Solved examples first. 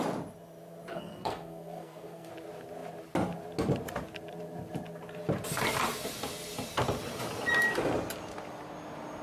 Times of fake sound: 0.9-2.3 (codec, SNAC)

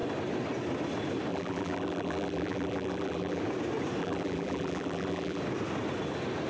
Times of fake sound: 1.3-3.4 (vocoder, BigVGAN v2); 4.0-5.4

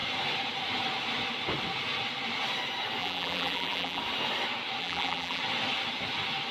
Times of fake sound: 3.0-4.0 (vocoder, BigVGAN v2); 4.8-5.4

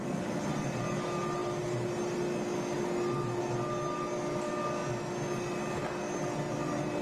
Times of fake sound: none